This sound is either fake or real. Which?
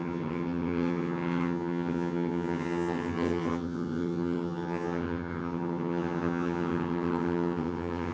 fake